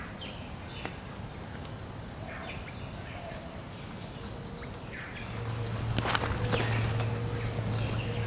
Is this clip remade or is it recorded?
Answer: recorded